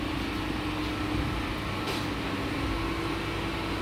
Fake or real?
real